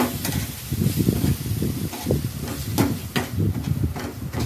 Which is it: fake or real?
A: real